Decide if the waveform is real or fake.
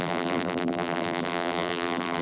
fake